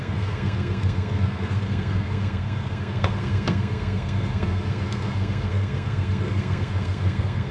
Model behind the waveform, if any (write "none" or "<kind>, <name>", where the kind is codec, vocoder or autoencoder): codec, SNAC